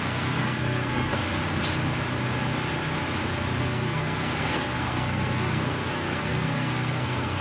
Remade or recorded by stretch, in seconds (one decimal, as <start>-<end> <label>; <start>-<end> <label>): 0.0-1.2 remade; 1.2-3.6 recorded; 3.6-7.4 remade